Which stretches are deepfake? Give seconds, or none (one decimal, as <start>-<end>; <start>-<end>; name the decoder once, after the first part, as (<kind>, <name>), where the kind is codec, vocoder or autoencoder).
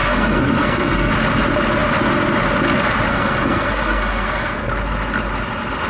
0.0-1.1 (codec, SNAC); 3.1-4.7